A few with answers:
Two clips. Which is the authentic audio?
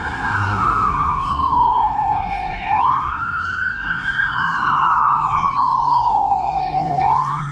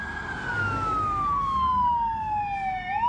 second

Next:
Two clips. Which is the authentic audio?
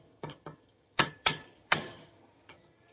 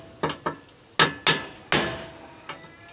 second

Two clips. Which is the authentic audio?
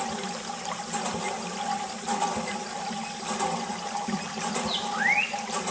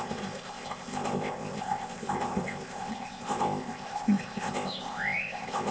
first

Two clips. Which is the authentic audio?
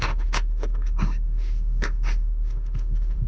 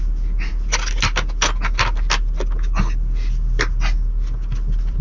second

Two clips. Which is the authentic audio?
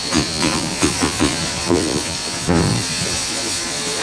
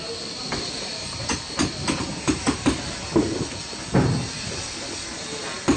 second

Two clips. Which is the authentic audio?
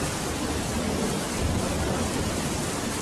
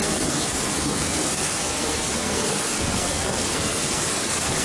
first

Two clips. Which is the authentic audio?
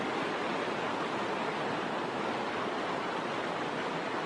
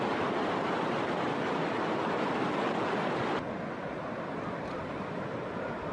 first